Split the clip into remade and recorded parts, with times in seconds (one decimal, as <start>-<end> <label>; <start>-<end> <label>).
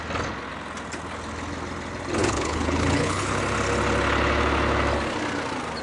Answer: 0.0-2.2 recorded; 2.2-3.4 remade; 3.4-5.8 recorded